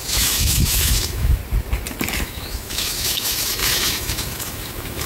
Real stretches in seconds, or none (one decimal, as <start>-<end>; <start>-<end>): 1.4-2.2